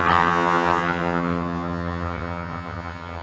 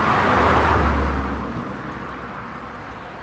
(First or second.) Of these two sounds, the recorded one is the second